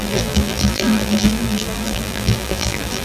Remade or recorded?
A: remade